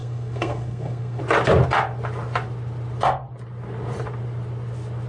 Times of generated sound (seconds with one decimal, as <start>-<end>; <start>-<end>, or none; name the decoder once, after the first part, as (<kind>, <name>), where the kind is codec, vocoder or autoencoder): 0.0-1.2 (codec, SNAC)